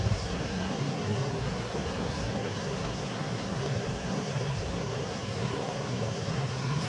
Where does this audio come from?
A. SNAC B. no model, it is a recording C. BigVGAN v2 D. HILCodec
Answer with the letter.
A